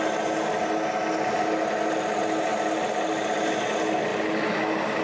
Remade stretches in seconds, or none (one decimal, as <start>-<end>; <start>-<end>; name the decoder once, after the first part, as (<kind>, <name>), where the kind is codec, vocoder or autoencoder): none